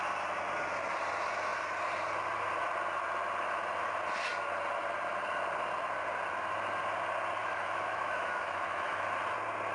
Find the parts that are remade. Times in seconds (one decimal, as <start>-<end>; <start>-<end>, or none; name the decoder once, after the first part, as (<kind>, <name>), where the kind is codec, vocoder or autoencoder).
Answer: 7.4-9.1 (autoencoder, DAC-VAE)